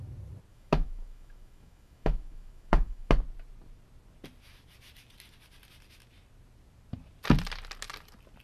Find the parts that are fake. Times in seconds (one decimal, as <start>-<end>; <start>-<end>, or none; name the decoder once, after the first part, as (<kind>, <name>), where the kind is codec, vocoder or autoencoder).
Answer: 0.5-3.1 (autoencoder, DAC-VAE)